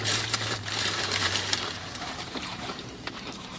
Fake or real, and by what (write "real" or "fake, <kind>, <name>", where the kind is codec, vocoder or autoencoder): fake, vocoder, BigVGAN v2